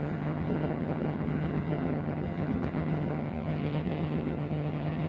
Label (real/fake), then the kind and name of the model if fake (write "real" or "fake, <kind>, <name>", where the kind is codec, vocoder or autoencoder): fake, vocoder, HiFi-GAN